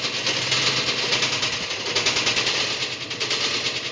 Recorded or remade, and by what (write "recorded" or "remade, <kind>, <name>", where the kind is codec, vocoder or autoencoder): recorded